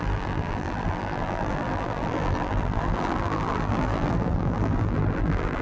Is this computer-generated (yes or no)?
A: yes